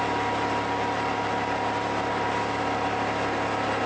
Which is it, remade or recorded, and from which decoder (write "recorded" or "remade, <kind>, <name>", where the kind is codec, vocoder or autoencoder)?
recorded